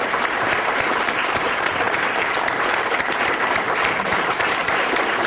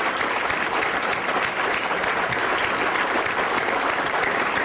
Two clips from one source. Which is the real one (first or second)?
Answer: second